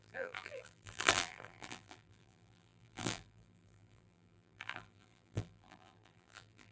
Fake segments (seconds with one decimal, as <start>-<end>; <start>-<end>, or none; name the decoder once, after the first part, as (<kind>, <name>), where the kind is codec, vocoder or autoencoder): 0.0-6.7 (vocoder, BigVGAN v2)